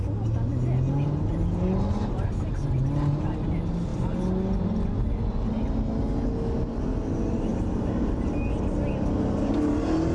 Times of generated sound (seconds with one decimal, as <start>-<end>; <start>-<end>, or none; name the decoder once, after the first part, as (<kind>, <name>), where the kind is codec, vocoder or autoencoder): none

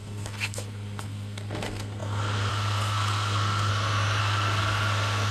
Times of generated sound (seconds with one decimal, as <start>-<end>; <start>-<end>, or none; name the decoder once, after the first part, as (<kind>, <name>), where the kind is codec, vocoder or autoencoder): 0.0-3.7 (codec, SNAC); 4.2-5.3

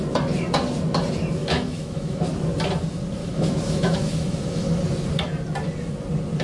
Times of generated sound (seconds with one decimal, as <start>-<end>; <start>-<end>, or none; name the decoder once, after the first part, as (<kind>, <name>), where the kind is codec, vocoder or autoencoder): 1.4-2.2 (autoencoder, DAC-VAE); 3.2-4.8

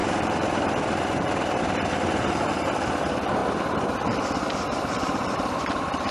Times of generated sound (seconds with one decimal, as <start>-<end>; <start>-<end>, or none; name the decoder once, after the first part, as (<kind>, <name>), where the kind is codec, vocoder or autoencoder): 0.0-6.1 (vocoder, BigVGAN v2)